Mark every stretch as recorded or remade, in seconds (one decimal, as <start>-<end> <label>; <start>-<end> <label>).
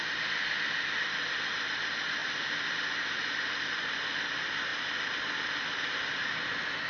0.0-6.9 recorded